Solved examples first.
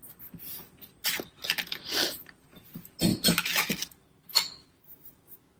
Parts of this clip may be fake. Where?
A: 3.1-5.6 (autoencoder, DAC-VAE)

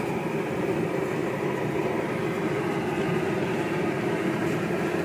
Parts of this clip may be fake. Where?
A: none